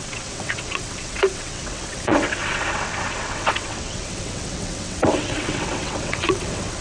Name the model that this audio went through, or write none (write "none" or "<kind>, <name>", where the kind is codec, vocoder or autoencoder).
vocoder, WaveNeXt